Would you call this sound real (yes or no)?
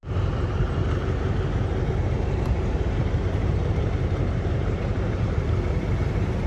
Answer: no